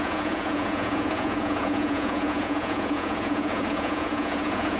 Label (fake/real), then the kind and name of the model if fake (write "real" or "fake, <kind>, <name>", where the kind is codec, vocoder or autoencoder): fake, vocoder, Vocos